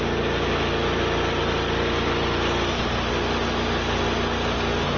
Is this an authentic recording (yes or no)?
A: yes